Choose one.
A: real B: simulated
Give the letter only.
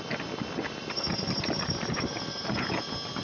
A